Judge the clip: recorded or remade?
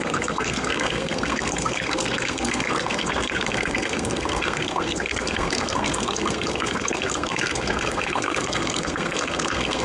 remade